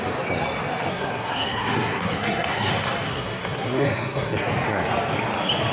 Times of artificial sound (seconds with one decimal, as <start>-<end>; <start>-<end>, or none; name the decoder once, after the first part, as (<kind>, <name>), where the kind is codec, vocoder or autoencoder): 0.9-2.7 (codec, SNAC); 3.1-4.5